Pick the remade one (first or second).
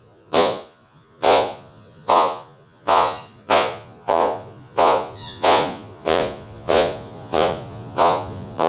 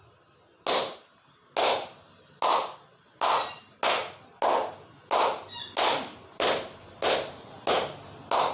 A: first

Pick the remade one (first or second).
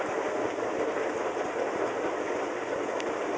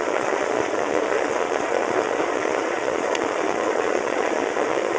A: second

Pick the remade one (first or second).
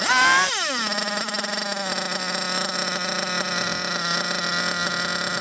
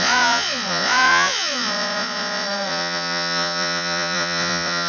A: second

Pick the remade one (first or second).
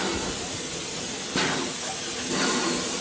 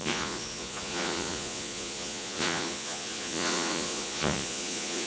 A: second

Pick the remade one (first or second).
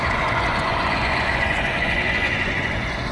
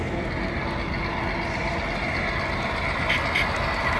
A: first